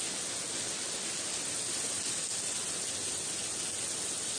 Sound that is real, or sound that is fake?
real